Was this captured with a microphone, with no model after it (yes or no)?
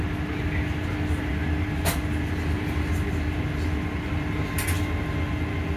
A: yes